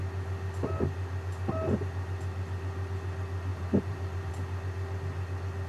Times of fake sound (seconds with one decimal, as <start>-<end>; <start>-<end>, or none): 3.5-4.3